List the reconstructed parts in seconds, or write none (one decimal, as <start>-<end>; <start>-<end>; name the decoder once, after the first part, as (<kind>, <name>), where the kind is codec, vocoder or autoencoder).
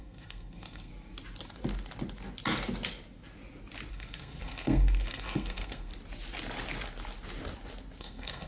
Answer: 0.0-0.9 (codec, SNAC); 3.9-5.9; 8.0-8.5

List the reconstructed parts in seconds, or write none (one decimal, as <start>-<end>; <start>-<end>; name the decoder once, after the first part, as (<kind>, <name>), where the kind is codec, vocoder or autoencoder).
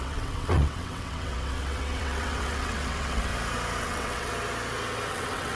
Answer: 0.0-3.3 (vocoder, WaveNeXt); 3.8-4.3; 5.1-5.6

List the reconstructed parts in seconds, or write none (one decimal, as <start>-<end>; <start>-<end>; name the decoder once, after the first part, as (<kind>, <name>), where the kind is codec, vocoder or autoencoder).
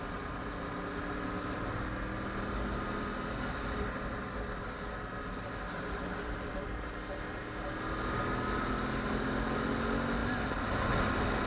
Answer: none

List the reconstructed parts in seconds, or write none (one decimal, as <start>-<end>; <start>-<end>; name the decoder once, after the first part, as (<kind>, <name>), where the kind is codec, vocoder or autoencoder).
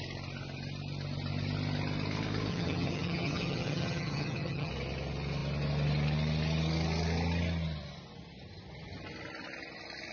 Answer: 2.5-4.7 (vocoder, HiFi-GAN)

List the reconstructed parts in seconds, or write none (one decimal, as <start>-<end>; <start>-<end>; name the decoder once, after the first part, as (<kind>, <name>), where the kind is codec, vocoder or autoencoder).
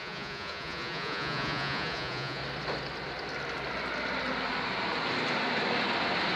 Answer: 0.0-2.4 (vocoder, Vocos)